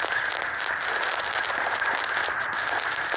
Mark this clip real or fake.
real